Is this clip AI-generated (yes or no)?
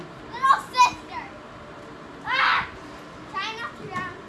no